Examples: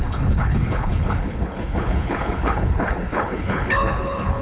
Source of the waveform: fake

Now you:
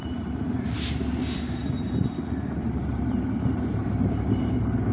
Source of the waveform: fake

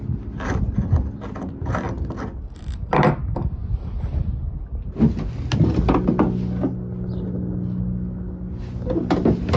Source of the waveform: real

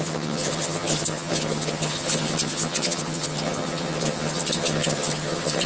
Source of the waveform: fake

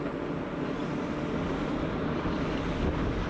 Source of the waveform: real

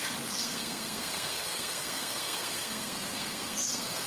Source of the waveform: fake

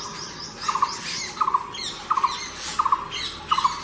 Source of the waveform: real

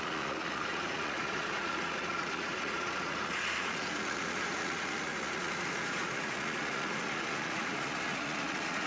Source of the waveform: fake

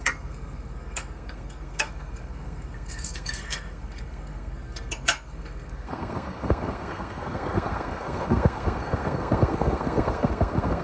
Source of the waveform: fake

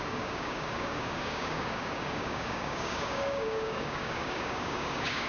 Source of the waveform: fake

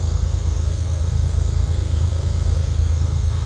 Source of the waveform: fake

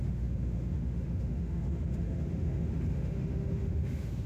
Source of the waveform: fake